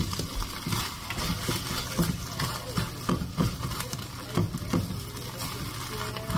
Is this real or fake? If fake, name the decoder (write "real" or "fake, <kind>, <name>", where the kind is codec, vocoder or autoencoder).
real